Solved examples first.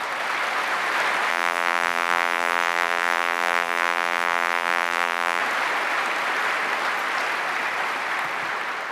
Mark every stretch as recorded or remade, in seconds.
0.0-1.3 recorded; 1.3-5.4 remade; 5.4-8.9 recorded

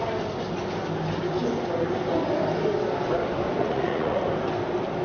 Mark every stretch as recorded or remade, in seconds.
0.0-3.6 recorded; 3.6-4.2 remade; 4.2-5.0 recorded

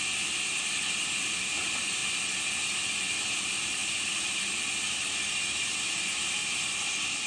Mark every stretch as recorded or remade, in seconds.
0.0-7.3 recorded